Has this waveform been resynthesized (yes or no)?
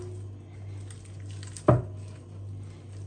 no